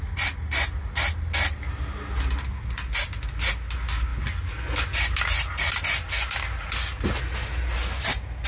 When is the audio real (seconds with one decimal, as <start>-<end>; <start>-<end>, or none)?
0.0-8.5

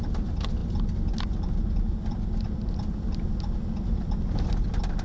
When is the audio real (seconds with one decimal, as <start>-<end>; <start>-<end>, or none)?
0.0-5.0

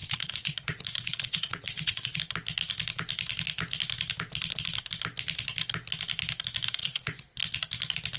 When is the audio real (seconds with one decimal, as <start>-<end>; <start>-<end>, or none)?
2.2-6.8; 7.4-8.2

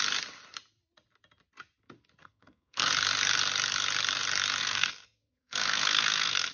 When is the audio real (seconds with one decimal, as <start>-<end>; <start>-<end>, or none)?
0.0-2.2; 2.9-4.6